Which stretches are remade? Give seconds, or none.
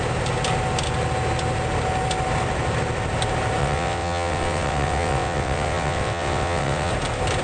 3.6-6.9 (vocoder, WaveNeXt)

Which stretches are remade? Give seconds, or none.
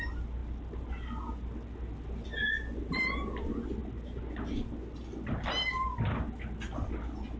none